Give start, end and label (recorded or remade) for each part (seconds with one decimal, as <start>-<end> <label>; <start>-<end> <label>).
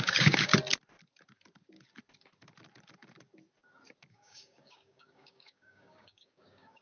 0.0-0.5 remade; 0.5-4.1 recorded; 4.1-6.8 remade